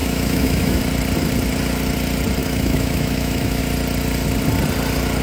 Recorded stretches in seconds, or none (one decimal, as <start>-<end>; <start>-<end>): 0.8-2.4; 3.6-5.2